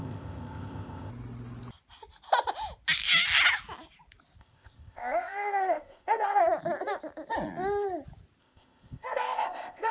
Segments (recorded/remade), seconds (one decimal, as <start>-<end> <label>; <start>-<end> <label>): 0.0-1.1 remade; 1.1-4.4 recorded; 4.4-6.4 remade; 6.4-8.4 recorded; 8.4-9.9 remade